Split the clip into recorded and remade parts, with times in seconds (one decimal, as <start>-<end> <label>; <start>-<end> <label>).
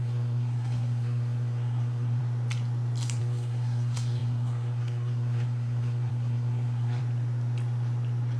0.0-2.2 remade; 2.2-3.2 recorded; 3.2-7.0 remade; 7.0-8.4 recorded